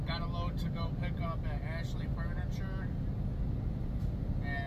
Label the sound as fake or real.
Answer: real